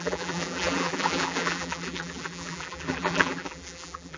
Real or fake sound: fake